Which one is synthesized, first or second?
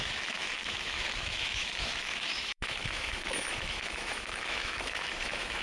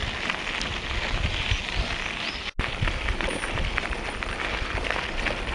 first